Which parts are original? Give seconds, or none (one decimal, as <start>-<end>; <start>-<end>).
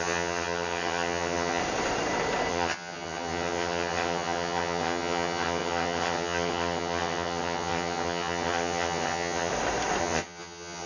1.6-2.5; 9.5-10.0